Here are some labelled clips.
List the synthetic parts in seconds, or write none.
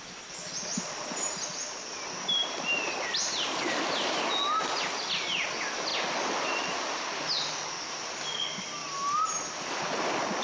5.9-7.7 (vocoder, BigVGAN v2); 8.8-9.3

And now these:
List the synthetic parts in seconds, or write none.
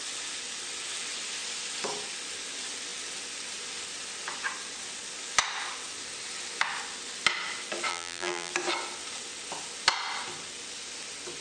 7.9-8.5 (vocoder, BigVGAN v2)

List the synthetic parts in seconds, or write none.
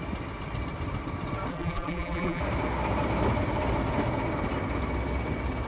1.5-2.4 (vocoder, BigVGAN v2)